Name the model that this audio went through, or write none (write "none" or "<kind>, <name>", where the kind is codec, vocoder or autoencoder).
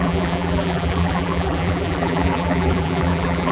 vocoder, BigVGAN v2